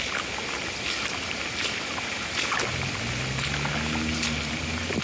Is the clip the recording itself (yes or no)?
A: yes